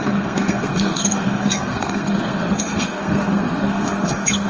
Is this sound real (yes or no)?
no